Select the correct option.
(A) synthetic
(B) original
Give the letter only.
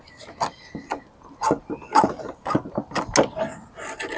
B